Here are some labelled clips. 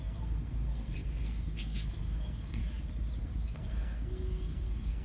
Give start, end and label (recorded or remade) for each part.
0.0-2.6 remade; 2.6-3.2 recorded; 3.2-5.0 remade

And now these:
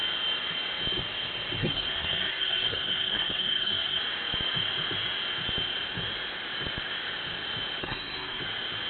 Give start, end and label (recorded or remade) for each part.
0.0-1.6 recorded; 1.6-4.0 remade; 4.0-7.8 recorded; 7.8-8.4 remade; 8.4-8.9 recorded

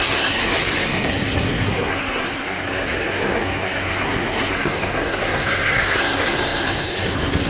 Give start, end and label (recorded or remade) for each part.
0.0-7.5 remade

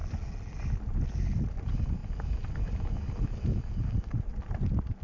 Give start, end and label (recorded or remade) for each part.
0.0-5.0 recorded

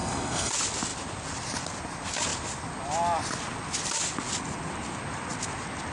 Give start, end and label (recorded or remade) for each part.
0.0-0.5 remade; 0.5-5.9 recorded

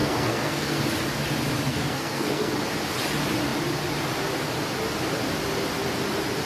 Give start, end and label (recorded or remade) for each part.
0.0-0.8 remade; 0.8-1.7 recorded; 1.7-2.5 remade; 2.5-6.5 recorded